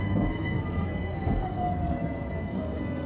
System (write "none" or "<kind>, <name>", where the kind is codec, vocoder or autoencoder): codec, SNAC